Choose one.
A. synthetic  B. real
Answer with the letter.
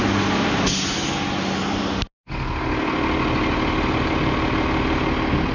B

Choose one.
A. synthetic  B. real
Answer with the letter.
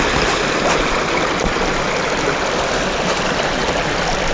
B